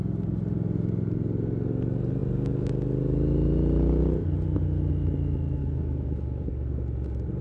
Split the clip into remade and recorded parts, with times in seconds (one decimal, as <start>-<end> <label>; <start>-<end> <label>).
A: 0.0-5.6 recorded; 5.6-6.8 remade; 6.8-7.4 recorded